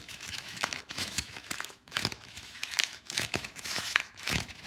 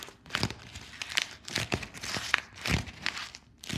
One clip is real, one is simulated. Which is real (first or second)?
second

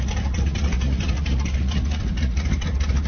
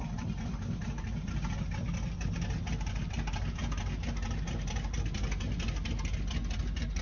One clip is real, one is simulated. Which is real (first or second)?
second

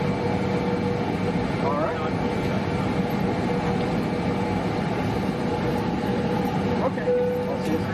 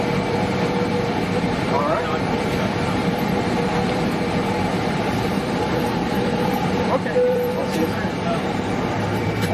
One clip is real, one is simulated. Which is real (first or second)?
first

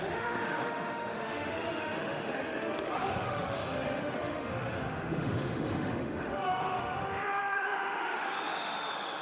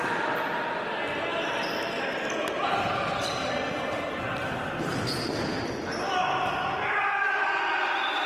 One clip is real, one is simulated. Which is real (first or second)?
second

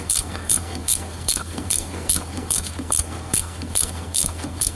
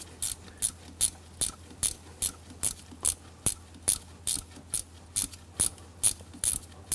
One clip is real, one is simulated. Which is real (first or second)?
second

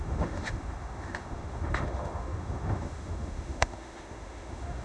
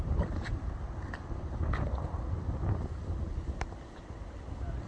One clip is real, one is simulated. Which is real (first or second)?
second